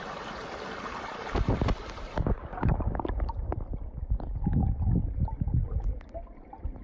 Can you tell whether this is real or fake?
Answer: real